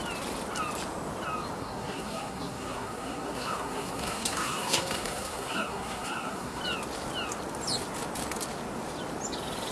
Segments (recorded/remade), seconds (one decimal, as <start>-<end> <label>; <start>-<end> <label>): 0.0-1.6 recorded; 1.6-6.6 remade; 6.6-9.7 recorded